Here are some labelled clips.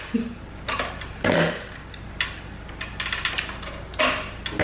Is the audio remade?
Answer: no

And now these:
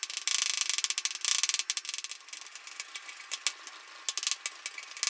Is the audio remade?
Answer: no